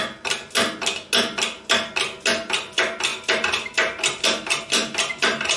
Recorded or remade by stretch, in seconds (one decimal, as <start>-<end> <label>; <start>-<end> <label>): 0.0-5.6 recorded